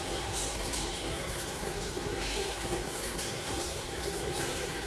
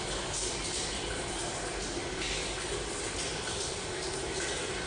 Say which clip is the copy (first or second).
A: first